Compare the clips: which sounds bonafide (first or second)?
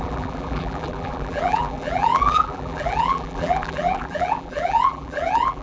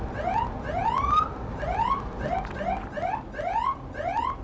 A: second